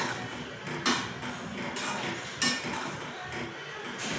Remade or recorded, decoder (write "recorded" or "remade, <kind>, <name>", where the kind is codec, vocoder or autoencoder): recorded